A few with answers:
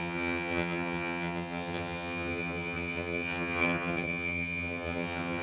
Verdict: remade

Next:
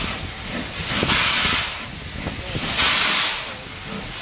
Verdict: recorded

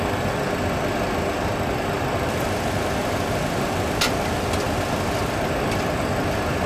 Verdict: recorded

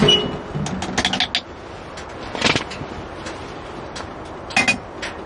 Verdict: recorded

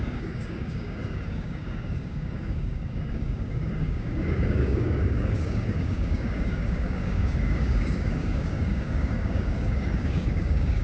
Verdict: remade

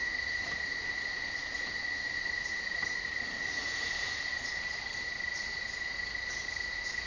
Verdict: remade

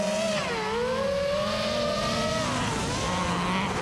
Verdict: recorded